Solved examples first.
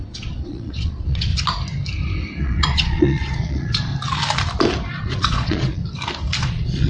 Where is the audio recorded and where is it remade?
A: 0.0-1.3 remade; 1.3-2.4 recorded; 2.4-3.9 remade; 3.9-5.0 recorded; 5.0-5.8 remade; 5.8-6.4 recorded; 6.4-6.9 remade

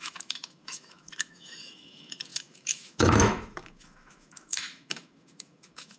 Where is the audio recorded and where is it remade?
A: 0.0-6.0 remade

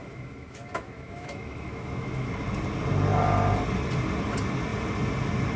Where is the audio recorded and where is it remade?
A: 0.0-2.3 remade; 2.3-5.6 recorded